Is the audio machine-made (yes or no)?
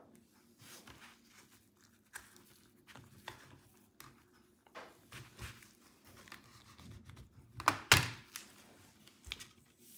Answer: no